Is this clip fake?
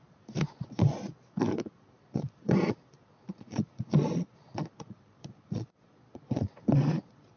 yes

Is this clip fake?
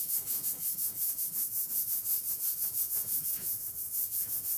yes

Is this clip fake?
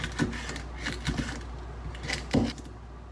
no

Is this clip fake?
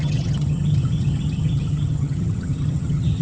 yes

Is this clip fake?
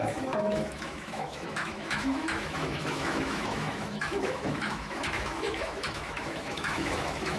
yes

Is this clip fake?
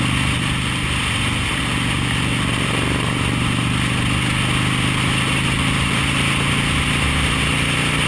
no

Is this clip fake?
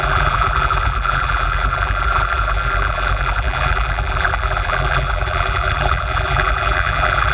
yes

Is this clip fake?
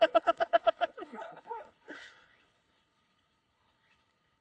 yes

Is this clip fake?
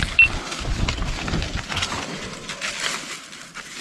no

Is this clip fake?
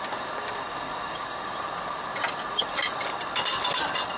no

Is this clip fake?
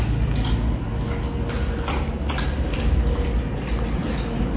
no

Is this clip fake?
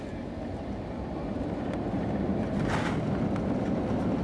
no